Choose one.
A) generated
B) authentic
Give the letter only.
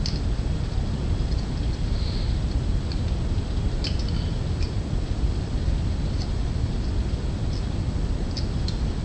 B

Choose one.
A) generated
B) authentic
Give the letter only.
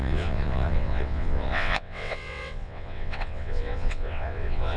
A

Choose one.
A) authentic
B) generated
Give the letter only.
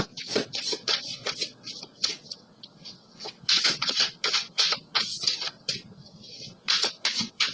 B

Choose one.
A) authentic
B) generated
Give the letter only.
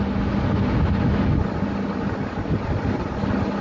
A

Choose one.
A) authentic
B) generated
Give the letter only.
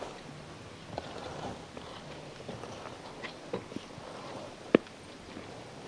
A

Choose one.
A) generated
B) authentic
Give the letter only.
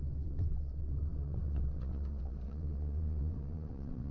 A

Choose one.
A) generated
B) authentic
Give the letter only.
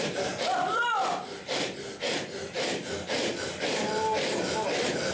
B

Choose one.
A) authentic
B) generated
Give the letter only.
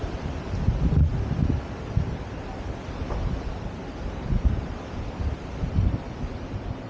A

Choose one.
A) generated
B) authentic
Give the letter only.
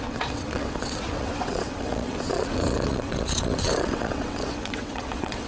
A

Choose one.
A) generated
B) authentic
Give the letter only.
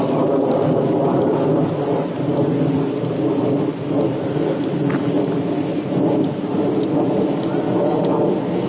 B